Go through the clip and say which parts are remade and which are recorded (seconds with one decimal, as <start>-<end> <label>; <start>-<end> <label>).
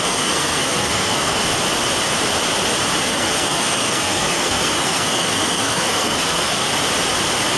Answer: 0.0-1.4 remade; 1.4-3.0 recorded; 3.0-6.7 remade; 6.7-7.6 recorded